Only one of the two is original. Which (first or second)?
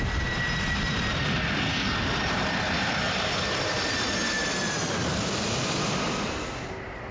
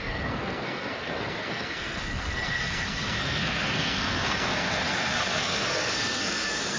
first